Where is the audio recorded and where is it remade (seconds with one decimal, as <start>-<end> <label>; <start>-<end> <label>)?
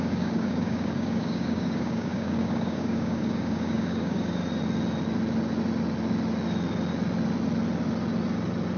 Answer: 0.0-4.4 remade; 4.4-8.8 recorded